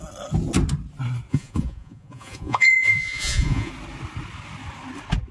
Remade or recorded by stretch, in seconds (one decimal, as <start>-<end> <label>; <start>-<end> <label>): 0.0-1.3 recorded; 1.3-3.7 remade; 3.7-5.3 recorded